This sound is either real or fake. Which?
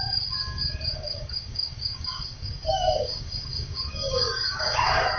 fake